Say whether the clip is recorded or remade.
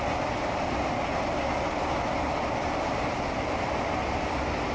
recorded